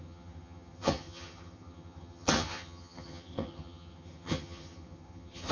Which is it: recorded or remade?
remade